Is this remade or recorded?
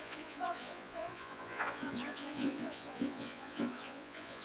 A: remade